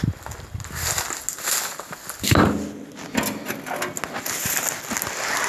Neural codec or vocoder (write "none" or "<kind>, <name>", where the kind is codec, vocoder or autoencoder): none